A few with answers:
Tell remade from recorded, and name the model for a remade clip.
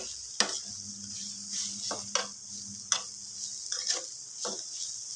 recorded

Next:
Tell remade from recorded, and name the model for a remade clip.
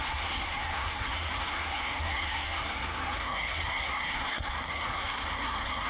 remade, codec, SNAC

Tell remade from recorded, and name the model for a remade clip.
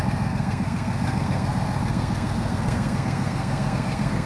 remade, codec, SNAC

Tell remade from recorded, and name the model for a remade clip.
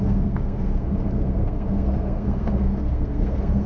remade, codec, SNAC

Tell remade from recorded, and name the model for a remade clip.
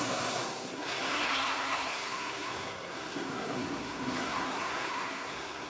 remade, codec, SNAC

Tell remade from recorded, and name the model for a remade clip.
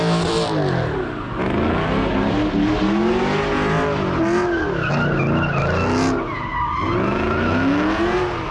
recorded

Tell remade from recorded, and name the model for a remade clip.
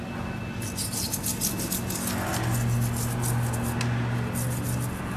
recorded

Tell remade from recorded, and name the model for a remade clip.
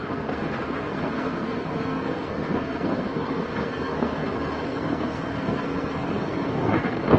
remade, codec, SNAC